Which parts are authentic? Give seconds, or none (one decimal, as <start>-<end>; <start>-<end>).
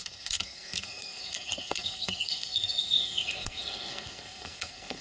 none